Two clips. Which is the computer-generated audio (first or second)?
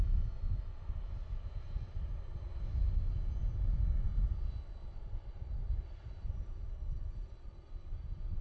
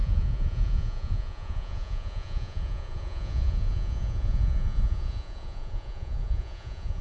second